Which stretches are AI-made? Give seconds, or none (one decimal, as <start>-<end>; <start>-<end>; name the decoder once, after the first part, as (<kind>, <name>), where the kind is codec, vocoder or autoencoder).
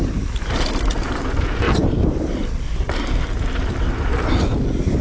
0.0-5.0 (vocoder, BigVGAN v2)